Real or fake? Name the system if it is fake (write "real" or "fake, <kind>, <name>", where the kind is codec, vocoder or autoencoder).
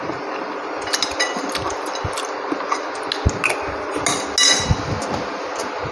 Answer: real